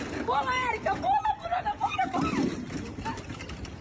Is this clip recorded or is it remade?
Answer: remade